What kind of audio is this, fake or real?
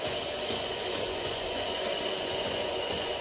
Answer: fake